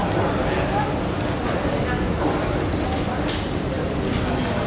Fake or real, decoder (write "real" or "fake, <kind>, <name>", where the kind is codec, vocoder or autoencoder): real